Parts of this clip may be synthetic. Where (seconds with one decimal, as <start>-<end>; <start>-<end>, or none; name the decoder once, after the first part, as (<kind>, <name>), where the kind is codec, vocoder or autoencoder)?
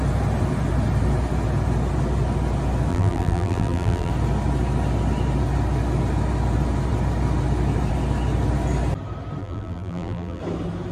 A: 2.9-4.1 (vocoder, BigVGAN v2); 9.4-10.4